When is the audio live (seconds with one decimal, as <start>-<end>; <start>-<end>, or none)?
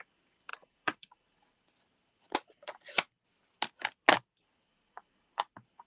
0.0-0.5; 1.6-4.7; 5.5-5.9